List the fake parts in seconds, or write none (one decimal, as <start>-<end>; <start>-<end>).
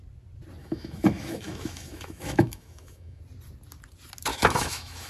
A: 0.6-3.2; 4.3-5.1